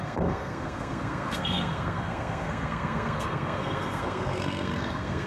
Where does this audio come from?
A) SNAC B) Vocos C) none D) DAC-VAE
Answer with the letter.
A